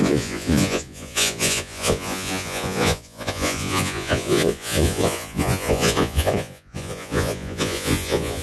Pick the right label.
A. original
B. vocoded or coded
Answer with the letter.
B